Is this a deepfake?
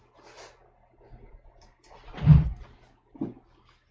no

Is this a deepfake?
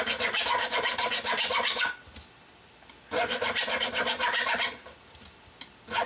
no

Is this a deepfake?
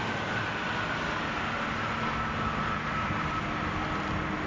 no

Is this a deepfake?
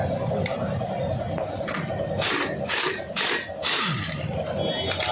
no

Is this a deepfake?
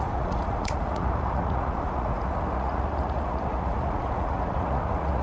yes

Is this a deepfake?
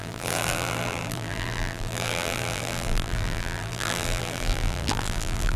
yes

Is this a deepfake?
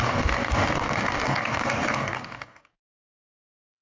yes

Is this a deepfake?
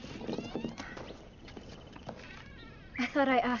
no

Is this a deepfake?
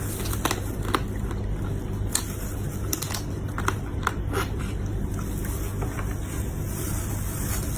no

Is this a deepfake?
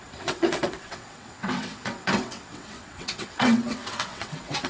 yes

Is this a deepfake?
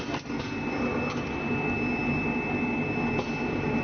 no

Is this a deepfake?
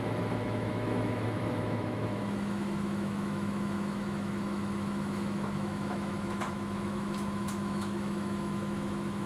yes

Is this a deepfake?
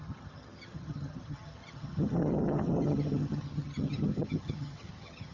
yes